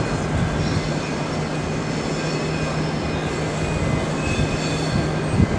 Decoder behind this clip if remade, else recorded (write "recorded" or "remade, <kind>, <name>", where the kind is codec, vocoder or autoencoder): recorded